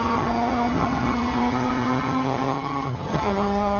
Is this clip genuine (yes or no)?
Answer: no